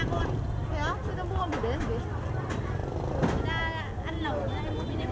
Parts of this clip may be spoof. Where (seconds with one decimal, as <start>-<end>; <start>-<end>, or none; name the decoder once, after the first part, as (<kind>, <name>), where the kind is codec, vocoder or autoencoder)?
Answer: none